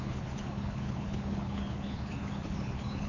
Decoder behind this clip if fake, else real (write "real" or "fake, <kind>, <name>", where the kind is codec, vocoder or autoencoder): fake, codec, HILCodec